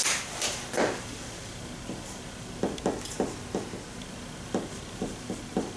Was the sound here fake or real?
real